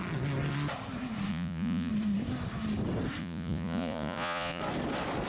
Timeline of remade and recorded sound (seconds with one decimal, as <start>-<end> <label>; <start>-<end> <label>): 0.0-1.3 recorded; 1.3-1.9 remade; 1.9-3.2 recorded; 3.2-4.6 remade; 4.6-5.3 recorded